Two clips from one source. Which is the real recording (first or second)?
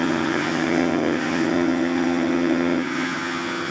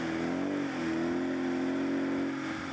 second